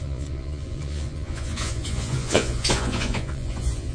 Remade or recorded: remade